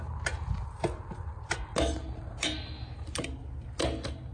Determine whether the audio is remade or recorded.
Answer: recorded